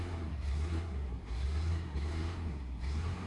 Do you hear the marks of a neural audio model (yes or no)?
yes